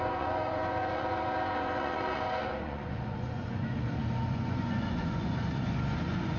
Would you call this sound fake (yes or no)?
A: yes